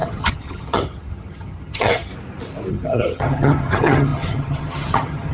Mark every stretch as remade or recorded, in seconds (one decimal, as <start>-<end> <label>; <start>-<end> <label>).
0.0-2.1 remade; 2.1-2.7 recorded; 2.7-5.3 remade